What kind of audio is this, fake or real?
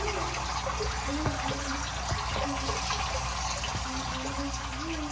real